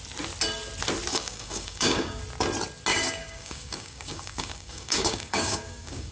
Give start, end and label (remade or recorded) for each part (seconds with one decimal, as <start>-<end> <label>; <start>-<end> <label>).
0.0-1.1 recorded; 1.1-2.2 remade; 2.2-2.9 recorded; 2.9-6.1 remade